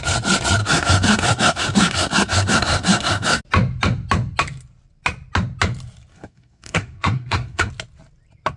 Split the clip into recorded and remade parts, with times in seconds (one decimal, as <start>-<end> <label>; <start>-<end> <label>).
0.0-0.6 recorded; 0.6-3.4 remade; 3.4-6.1 recorded; 6.1-7.7 remade; 7.7-8.6 recorded